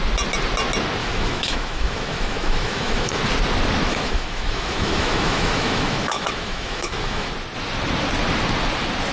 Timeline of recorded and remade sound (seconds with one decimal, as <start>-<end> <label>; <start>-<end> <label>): 0.0-1.0 recorded; 1.0-3.2 remade; 3.2-3.9 recorded; 3.9-7.3 remade; 7.3-9.1 recorded

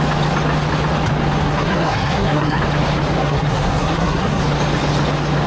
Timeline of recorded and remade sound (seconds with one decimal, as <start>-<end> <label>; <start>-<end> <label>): 0.0-1.4 recorded; 1.4-2.6 remade; 2.6-3.2 recorded; 3.2-4.4 remade; 4.4-5.5 recorded

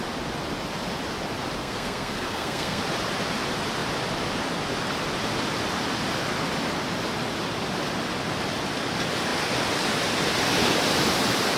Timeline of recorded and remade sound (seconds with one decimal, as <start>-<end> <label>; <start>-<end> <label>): 0.0-1.6 recorded; 1.6-2.8 remade; 2.8-11.6 recorded